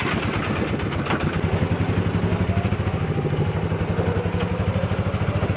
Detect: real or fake real